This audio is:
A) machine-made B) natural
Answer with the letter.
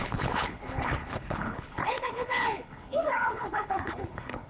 A